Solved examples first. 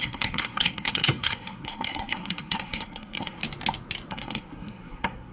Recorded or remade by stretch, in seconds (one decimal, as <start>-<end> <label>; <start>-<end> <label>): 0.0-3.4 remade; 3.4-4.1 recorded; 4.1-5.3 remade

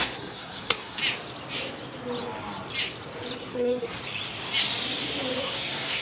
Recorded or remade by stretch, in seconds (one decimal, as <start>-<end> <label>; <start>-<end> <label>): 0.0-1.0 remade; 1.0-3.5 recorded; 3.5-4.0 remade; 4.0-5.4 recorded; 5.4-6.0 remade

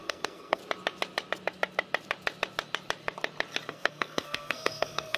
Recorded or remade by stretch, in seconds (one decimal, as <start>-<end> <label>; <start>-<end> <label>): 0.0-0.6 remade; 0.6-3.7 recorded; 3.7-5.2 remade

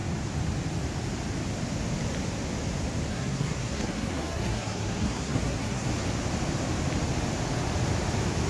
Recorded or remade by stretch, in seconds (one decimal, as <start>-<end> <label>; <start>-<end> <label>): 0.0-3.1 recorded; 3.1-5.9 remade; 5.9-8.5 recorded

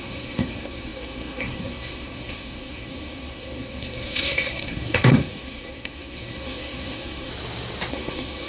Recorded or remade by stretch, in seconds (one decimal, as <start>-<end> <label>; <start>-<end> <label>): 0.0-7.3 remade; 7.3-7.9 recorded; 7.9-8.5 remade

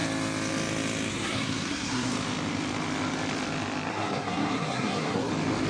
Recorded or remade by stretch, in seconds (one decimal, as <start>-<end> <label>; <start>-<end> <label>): 0.0-1.1 recorded; 1.1-2.1 remade; 2.1-3.9 recorded; 3.9-5.3 remade; 5.3-5.7 recorded

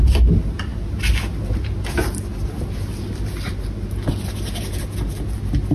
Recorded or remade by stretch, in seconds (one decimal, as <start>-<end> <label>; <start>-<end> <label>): 0.0-5.7 recorded